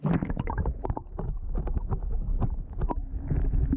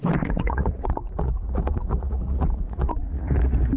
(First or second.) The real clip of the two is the first